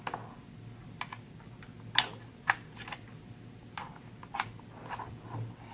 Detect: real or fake real